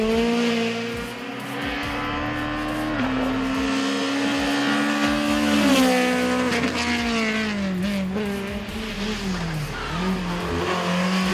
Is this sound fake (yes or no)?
no